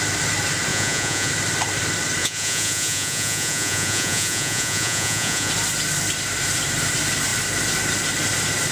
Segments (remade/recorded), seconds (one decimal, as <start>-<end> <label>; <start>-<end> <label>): 0.0-0.7 recorded; 0.7-1.3 remade; 1.3-2.2 recorded; 2.2-5.5 remade; 5.5-8.7 recorded